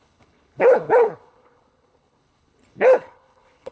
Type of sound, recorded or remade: remade